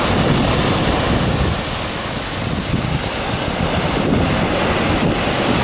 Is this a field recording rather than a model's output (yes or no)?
yes